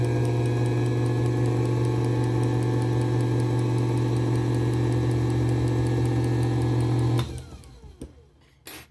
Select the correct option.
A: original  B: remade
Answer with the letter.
A